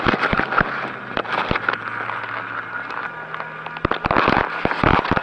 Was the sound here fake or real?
real